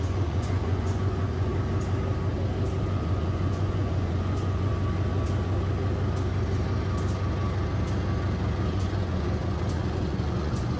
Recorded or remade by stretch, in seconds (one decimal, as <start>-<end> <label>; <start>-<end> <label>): 0.0-1.5 remade; 1.5-2.8 recorded; 2.8-4.7 remade; 4.7-8.7 recorded; 8.7-10.8 remade